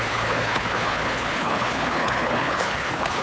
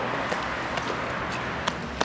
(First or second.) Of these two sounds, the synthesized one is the first